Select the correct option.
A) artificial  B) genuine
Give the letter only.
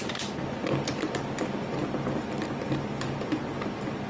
B